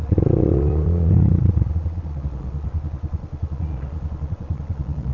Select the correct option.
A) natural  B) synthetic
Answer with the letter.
B